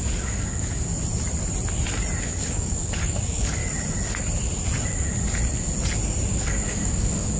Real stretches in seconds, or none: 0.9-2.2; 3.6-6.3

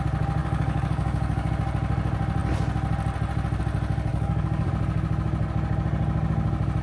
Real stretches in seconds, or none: 0.0-0.4; 1.5-4.1; 4.7-6.8

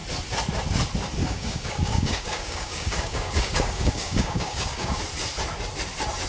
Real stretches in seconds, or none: 0.0-1.2; 5.0-6.3

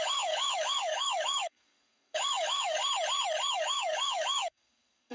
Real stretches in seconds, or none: 2.8-3.5

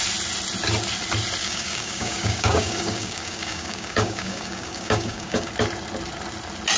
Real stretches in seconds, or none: 0.0-1.4; 5.5-6.8

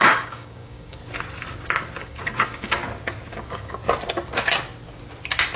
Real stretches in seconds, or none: 1.0-2.0; 2.8-3.3; 3.8-5.6

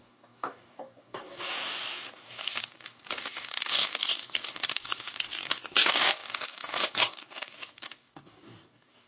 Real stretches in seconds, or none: none